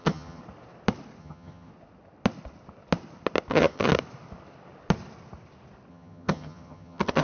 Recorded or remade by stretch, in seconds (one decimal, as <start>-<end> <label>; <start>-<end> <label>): 0.0-0.4 remade; 0.4-1.2 recorded; 1.2-1.7 remade; 1.7-3.5 recorded; 3.5-3.9 remade; 3.9-5.9 recorded; 5.9-7.2 remade